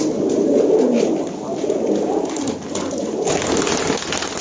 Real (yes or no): yes